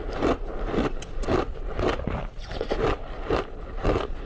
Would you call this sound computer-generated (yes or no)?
no